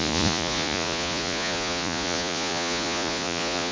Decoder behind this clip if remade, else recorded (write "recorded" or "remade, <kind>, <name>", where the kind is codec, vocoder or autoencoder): remade, vocoder, Vocos